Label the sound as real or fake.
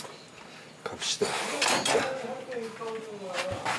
real